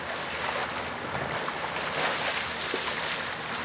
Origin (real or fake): real